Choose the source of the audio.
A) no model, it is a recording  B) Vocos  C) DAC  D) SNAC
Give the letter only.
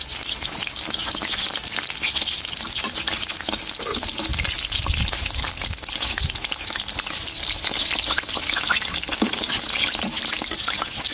A